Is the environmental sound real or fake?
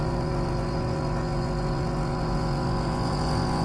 fake